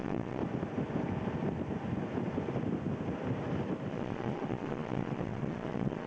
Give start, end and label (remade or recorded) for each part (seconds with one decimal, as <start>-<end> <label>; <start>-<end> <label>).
0.0-0.4 remade; 0.4-3.9 recorded; 3.9-6.1 remade